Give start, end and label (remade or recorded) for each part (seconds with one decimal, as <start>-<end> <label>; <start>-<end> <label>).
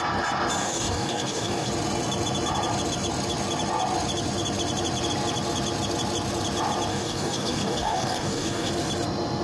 0.0-0.6 recorded; 0.6-1.7 remade; 1.7-6.9 recorded; 6.9-8.7 remade; 8.7-9.4 recorded